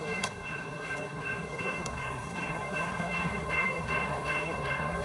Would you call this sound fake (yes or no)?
yes